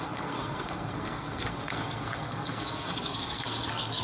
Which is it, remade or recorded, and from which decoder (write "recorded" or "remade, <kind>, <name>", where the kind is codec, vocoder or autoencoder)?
remade, codec, SNAC